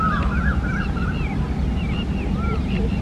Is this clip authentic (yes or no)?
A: yes